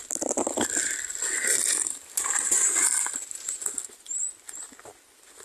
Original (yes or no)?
yes